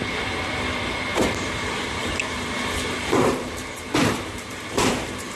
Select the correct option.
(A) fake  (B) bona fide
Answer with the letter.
A